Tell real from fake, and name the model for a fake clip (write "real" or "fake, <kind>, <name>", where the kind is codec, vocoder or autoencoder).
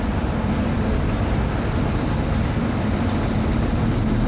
real